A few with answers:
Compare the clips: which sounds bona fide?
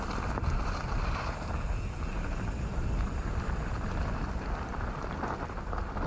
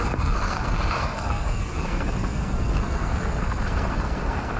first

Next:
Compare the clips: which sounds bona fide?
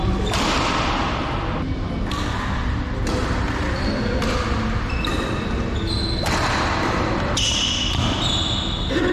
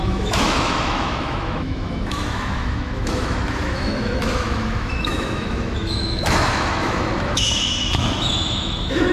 first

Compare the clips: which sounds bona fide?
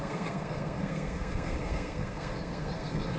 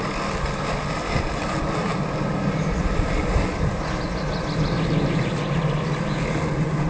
second